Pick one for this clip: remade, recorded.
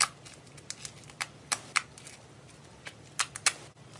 recorded